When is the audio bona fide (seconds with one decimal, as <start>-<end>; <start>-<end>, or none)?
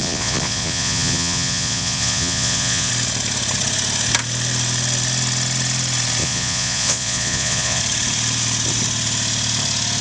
2.9-6.2; 7.8-10.0